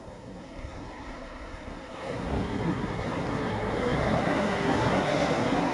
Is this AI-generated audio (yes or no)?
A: yes